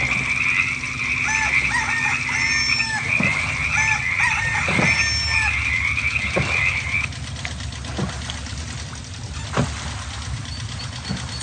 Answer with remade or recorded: recorded